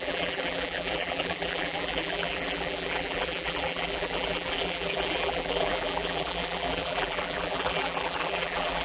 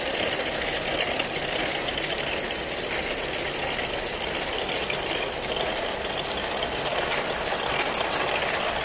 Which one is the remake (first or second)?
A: first